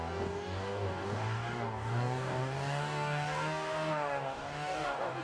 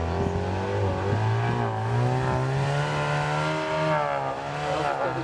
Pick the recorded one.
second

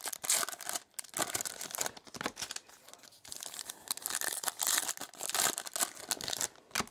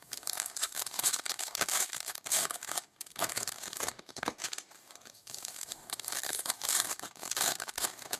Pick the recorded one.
first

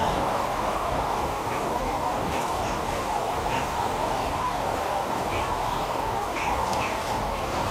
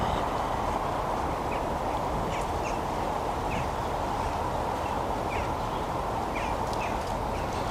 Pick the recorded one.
second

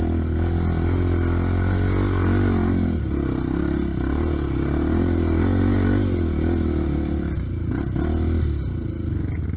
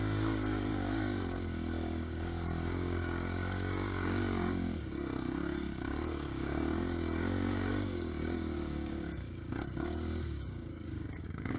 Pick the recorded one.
first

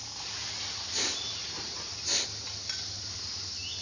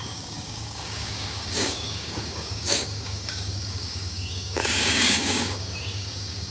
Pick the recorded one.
first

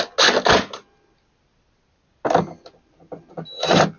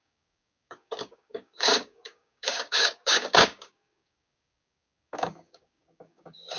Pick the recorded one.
first